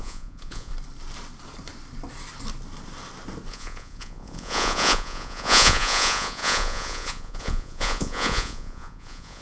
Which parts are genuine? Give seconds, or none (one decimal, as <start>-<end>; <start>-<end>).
0.7-3.5